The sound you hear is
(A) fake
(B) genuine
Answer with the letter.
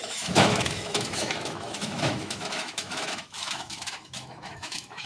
A